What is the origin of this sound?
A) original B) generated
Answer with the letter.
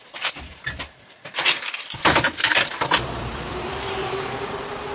B